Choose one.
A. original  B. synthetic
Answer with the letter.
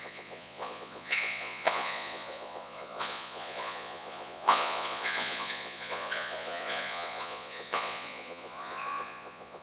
B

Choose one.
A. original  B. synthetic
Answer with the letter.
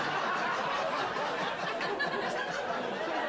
A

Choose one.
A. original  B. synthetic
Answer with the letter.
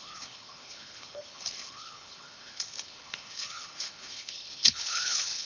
B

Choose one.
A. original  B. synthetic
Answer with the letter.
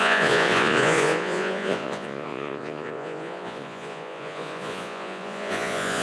B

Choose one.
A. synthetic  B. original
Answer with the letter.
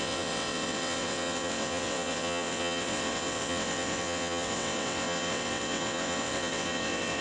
A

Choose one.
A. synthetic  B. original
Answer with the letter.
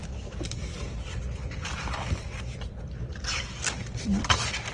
A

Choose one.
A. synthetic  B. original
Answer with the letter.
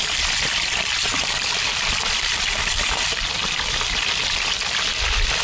A